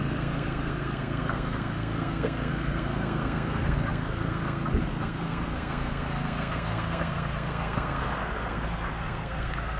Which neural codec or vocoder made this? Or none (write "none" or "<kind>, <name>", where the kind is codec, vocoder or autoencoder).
codec, SNAC